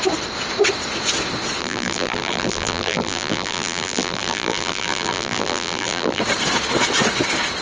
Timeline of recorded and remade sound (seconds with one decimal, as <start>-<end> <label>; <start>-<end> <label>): 0.0-1.6 recorded; 1.6-6.2 remade; 6.2-7.6 recorded